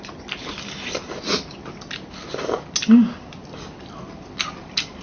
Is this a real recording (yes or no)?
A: yes